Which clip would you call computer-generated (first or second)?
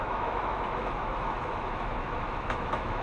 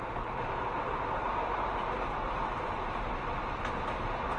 first